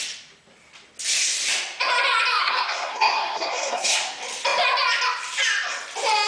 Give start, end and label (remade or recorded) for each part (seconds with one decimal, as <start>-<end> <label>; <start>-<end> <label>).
0.0-2.4 recorded; 2.4-4.0 remade; 4.0-6.3 recorded